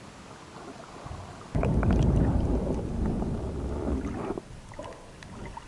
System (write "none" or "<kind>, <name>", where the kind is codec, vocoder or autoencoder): none